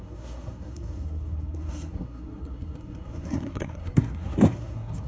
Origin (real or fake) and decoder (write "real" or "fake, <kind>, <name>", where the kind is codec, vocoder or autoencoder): fake, codec, SNAC